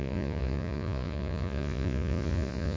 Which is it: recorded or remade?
remade